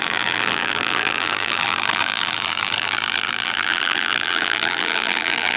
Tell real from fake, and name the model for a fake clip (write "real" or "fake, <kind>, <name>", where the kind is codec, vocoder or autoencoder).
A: fake, vocoder, BigVGAN v2